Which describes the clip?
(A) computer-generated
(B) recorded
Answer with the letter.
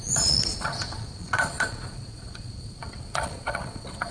A